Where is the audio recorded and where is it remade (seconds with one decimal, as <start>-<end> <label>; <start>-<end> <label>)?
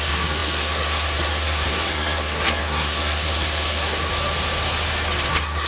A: 0.0-4.1 remade; 4.1-5.3 recorded; 5.3-5.7 remade